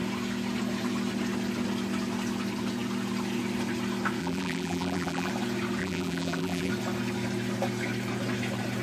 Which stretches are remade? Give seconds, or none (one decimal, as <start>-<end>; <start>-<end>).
4.2-5.3; 5.8-6.7